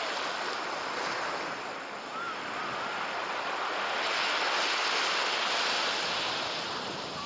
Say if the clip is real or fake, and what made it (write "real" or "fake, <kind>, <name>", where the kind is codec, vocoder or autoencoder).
real